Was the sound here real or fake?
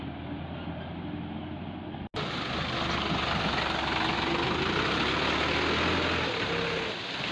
real